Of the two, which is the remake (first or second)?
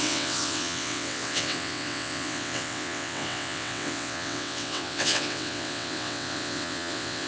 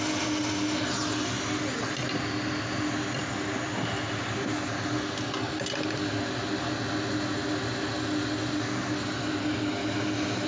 first